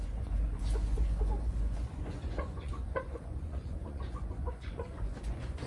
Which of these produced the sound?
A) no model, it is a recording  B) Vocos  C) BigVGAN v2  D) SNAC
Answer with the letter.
B